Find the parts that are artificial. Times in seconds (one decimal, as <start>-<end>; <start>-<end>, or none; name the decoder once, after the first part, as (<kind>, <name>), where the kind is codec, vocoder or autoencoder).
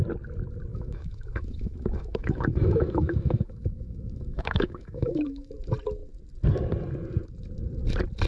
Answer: 0.7-5.5 (autoencoder, DAC-VAE)